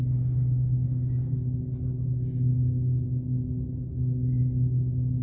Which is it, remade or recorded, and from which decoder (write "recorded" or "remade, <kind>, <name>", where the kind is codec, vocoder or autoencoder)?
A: recorded